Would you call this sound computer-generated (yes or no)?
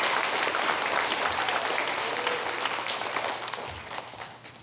no